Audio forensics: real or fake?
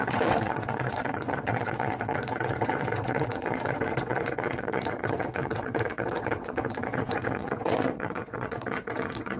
fake